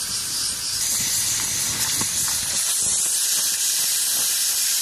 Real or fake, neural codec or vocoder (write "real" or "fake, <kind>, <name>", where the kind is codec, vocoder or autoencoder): real